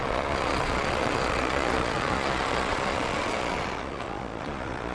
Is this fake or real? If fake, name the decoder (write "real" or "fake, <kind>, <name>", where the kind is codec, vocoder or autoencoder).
fake, vocoder, Vocos